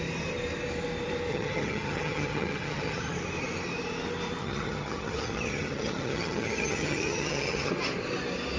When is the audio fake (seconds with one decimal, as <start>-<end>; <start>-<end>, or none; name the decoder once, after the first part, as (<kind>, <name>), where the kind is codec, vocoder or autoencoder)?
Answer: 1.3-3.1 (vocoder, HiFi-GAN); 4.4-7.7